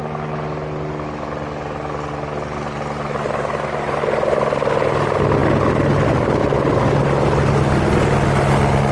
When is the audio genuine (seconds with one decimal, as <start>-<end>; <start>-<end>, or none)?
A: 0.0-8.9